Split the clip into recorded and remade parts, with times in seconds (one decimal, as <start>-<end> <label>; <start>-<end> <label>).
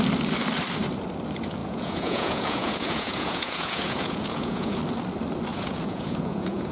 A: 0.0-1.6 recorded; 1.6-4.8 remade; 4.8-5.5 recorded; 5.5-6.7 remade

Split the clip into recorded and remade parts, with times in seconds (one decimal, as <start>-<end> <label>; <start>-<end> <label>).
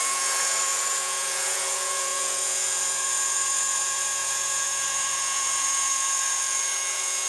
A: 0.0-7.3 remade